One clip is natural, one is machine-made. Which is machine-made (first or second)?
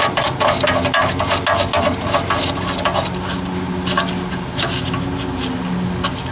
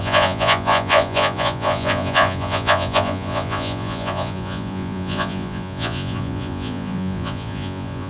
second